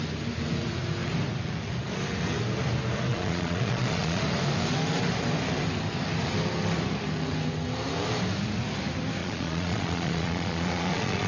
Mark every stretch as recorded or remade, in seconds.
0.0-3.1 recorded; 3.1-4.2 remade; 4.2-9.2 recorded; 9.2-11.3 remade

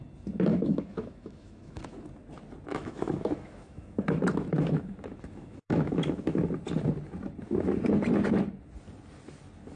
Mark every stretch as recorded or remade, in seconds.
0.0-0.5 recorded; 0.5-2.0 remade; 2.0-2.7 recorded; 2.7-6.4 remade; 6.4-9.8 recorded

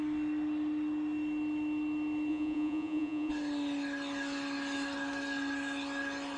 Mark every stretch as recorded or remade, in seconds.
0.0-2.3 recorded; 2.3-3.3 remade; 3.3-6.4 recorded